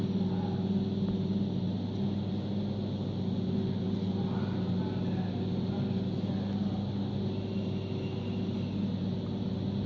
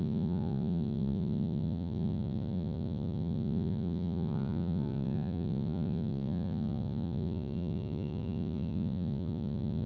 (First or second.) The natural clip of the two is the first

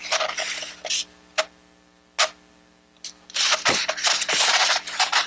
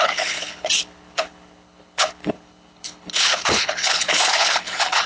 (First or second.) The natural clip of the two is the first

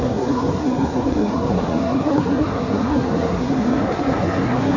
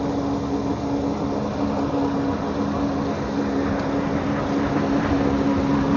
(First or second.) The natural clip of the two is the second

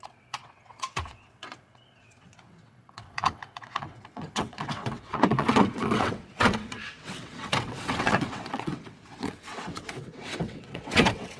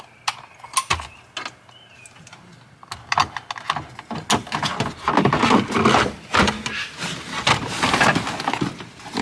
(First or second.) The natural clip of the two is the second